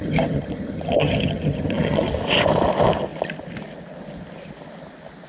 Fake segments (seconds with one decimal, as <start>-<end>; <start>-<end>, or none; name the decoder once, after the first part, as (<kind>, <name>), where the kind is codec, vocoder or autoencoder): 0.0-2.1 (vocoder, HiFi-GAN)